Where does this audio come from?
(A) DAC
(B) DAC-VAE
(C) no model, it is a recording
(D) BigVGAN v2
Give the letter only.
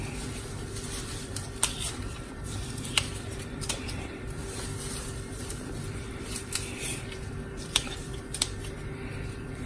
D